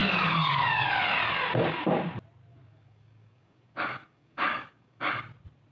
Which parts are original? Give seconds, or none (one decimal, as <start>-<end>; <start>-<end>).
1.0-2.5; 5.2-5.7